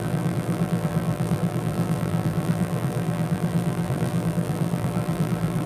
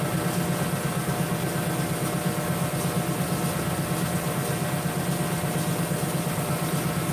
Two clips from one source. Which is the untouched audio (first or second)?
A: second